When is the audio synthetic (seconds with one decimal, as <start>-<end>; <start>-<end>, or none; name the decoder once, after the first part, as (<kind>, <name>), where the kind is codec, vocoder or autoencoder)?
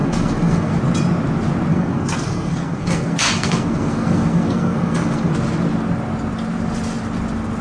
0.0-0.8 (codec, SNAC); 1.7-5.3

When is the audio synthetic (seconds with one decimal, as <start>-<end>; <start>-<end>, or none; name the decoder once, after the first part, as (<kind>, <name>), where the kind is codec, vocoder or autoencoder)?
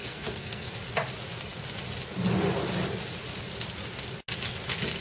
0.0-0.7 (codec, SNAC)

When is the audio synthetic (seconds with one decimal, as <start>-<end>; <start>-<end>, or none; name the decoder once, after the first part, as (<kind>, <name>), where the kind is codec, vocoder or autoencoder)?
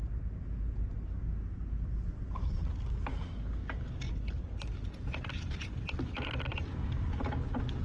none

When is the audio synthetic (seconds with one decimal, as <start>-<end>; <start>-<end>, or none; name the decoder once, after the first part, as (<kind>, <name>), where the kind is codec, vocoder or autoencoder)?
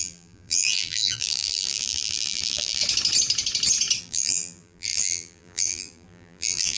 0.0-2.8 (vocoder, BigVGAN v2); 4.0-6.8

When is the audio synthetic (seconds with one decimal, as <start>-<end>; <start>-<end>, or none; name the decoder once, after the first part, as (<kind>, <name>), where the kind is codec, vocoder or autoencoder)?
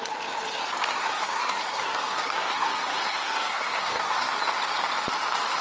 0.9-4.3 (codec, SNAC)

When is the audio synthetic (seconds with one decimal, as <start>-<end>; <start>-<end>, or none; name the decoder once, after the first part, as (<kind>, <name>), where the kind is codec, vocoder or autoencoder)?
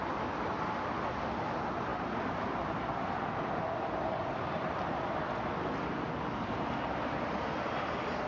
none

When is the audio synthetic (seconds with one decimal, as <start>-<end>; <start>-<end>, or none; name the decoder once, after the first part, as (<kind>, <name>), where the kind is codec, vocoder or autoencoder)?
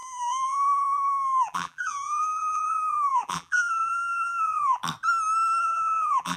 0.0-4.8 (vocoder, BigVGAN v2); 5.6-6.4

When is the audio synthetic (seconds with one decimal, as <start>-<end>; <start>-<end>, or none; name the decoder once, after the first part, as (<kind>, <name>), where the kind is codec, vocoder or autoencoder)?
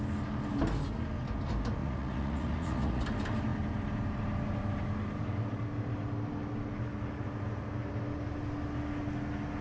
1.8-3.0 (vocoder, Vocos)